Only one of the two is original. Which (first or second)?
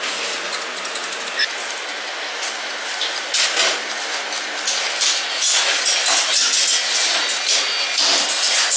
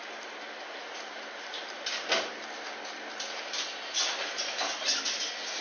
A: first